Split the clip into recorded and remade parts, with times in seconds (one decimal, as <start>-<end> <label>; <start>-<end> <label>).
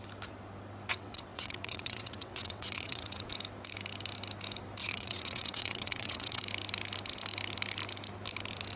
0.0-0.9 recorded; 0.9-3.3 remade; 3.3-4.8 recorded; 4.8-6.4 remade; 6.4-8.8 recorded